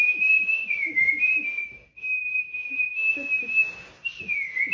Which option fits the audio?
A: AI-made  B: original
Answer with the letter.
B